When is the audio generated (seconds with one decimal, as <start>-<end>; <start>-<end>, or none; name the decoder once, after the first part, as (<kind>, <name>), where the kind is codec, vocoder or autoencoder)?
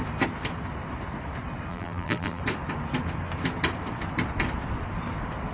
1.7-2.4 (vocoder, BigVGAN v2)